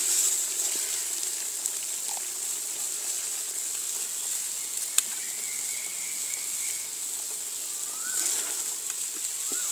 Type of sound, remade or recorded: recorded